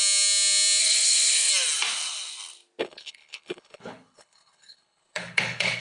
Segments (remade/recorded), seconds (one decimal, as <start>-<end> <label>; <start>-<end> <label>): 0.0-0.8 recorded; 0.8-1.5 remade; 1.5-2.8 recorded; 2.8-5.8 remade